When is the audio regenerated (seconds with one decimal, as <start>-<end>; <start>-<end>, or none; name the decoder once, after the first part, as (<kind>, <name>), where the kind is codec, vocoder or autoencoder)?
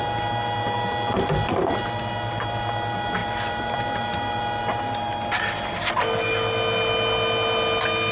3.2-3.8 (vocoder, BigVGAN v2)